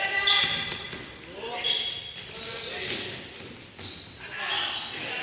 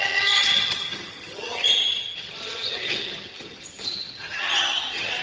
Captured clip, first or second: first